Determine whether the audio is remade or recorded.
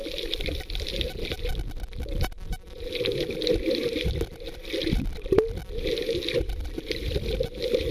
recorded